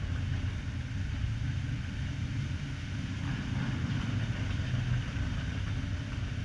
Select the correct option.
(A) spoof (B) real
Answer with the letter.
B